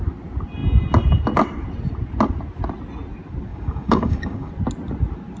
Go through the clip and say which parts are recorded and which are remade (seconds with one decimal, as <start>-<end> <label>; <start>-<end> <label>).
0.0-3.5 recorded; 3.5-4.5 remade; 4.5-5.4 recorded